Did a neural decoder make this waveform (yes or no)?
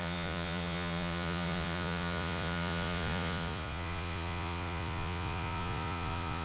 yes